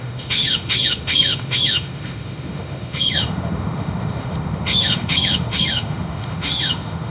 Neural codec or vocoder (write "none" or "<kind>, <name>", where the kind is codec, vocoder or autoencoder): autoencoder, DAC-VAE